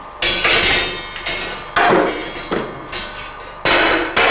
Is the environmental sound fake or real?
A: real